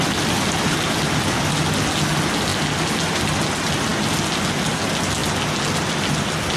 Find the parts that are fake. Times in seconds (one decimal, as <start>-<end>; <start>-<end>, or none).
none